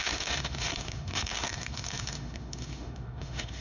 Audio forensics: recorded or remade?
remade